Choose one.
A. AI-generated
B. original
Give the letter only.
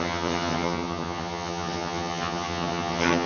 A